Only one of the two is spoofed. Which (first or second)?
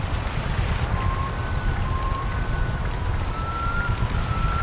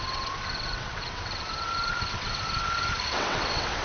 second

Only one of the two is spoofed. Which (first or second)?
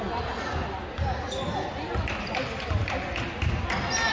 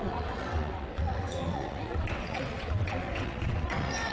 second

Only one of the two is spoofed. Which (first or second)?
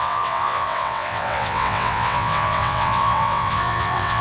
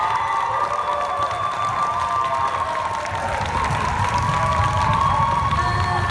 first